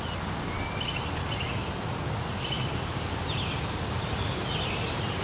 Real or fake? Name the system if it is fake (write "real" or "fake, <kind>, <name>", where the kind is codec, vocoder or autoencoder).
real